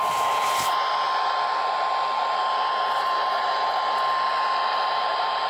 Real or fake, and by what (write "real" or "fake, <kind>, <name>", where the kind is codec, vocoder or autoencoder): real